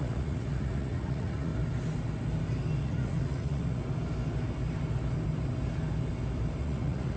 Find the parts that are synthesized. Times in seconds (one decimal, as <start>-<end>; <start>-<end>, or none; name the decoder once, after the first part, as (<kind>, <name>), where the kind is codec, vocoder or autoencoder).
0.0-1.5 (vocoder, Vocos); 2.8-3.8; 6.6-7.2